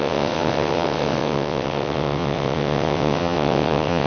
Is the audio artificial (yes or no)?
yes